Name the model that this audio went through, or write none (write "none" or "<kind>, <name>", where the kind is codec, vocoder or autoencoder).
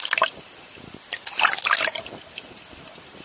none